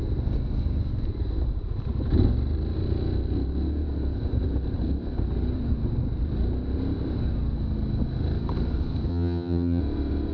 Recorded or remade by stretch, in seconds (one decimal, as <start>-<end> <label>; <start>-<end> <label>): 0.0-9.1 recorded; 9.1-9.8 remade; 9.8-10.3 recorded